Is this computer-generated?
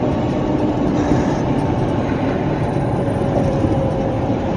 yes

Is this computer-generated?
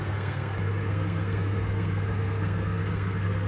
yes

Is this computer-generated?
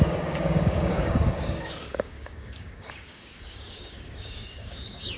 yes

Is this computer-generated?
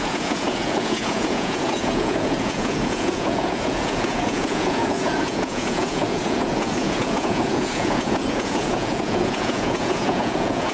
yes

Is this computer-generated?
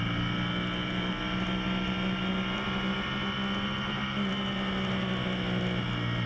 no